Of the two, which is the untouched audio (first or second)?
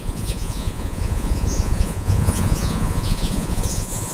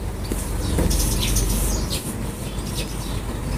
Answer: second